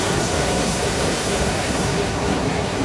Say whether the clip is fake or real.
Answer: fake